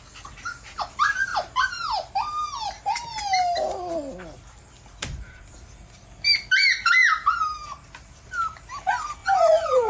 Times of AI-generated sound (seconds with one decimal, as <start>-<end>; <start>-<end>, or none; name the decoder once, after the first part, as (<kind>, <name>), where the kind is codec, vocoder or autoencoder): 9.2-9.9 (vocoder, Vocos)